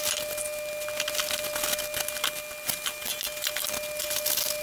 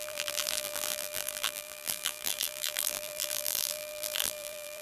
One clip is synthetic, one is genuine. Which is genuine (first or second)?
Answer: first